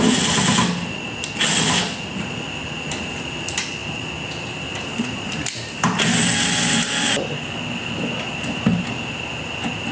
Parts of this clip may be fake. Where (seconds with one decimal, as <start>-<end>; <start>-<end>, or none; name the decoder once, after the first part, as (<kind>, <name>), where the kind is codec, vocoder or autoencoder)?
none